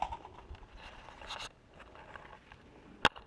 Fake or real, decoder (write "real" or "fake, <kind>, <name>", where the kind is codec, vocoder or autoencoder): real